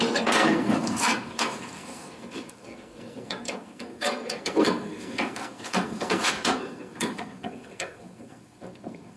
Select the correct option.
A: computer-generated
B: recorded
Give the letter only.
A